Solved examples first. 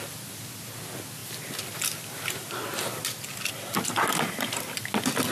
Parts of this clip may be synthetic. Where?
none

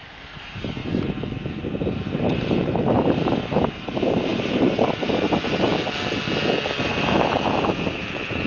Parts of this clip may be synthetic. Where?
0.0-0.8 (vocoder, BigVGAN v2); 1.4-5.7; 6.8-8.5

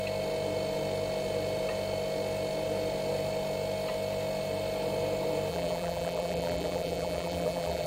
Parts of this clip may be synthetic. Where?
5.5-7.9 (vocoder, BigVGAN v2)